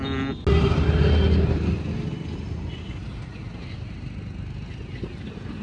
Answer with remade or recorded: recorded